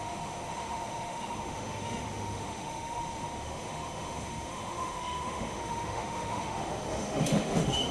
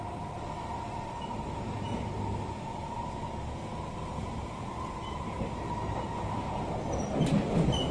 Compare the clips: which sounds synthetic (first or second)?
first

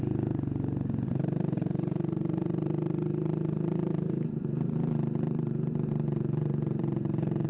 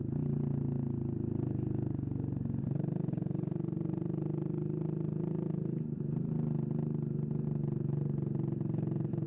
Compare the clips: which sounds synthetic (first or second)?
first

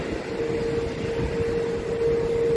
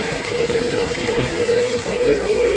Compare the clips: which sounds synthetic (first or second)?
second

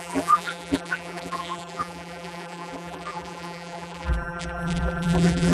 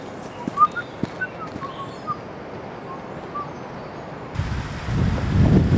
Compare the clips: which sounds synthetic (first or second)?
first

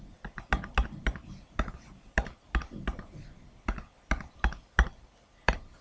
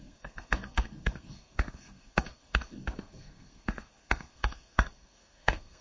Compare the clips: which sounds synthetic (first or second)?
second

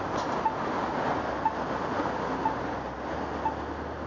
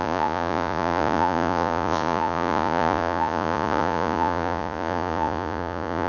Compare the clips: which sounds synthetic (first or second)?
second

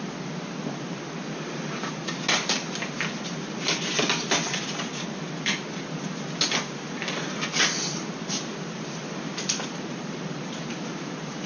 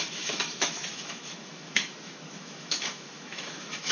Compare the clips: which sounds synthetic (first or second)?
second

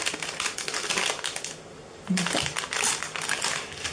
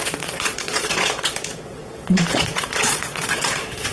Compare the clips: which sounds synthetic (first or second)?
second